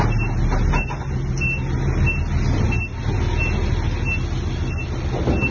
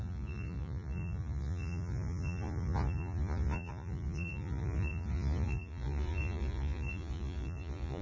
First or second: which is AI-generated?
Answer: second